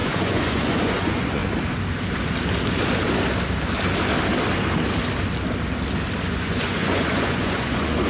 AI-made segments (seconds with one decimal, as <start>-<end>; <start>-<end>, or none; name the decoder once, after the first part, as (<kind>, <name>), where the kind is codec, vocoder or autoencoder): 0.0-1.4 (vocoder, Vocos); 6.3-8.1